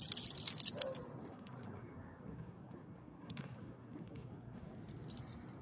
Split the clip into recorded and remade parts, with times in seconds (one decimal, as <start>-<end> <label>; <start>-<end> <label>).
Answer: 0.0-1.3 recorded; 1.3-4.7 remade; 4.7-5.6 recorded

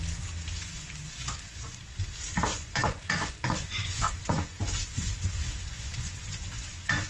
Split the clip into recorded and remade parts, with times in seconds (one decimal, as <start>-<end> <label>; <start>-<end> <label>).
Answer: 0.0-0.6 recorded; 0.6-1.8 remade; 1.8-2.5 recorded; 2.5-7.1 remade

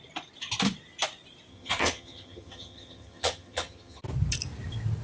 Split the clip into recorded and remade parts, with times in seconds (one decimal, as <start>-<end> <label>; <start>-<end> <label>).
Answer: 0.0-1.5 recorded; 1.5-4.0 remade; 4.0-5.0 recorded

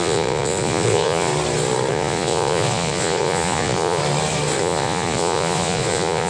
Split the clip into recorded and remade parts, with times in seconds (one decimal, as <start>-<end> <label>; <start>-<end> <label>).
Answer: 0.0-1.3 remade; 1.3-1.9 recorded; 1.9-4.0 remade; 4.0-4.6 recorded; 4.6-6.3 remade

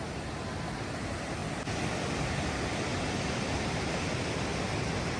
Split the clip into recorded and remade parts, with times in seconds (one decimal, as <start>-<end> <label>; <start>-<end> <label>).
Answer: 0.0-5.2 recorded

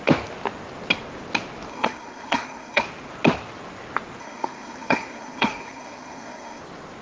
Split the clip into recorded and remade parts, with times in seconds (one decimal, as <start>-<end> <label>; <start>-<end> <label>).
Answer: 0.0-1.7 recorded; 1.7-2.8 remade; 2.8-4.2 recorded; 4.2-6.6 remade; 6.6-7.0 recorded

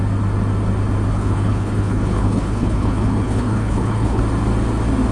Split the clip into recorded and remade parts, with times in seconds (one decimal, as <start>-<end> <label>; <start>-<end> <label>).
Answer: 0.0-1.1 recorded; 1.1-4.2 remade; 4.2-5.1 recorded

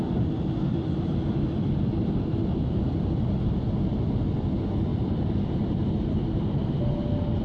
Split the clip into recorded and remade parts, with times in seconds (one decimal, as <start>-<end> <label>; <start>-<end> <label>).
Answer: 0.0-4.9 recorded; 4.9-5.6 remade; 5.6-7.4 recorded